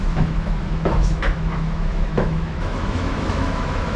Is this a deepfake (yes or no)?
yes